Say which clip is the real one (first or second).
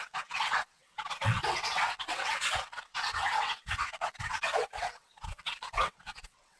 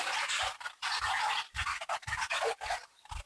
second